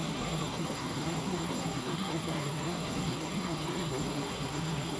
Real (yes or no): no